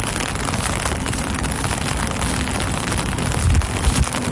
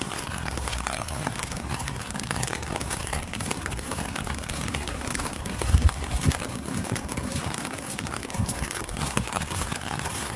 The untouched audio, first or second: first